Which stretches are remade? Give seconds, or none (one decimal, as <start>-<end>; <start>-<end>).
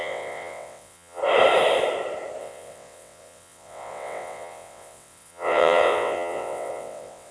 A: 0.0-1.2; 2.4-7.3